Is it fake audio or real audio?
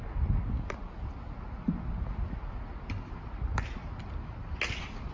real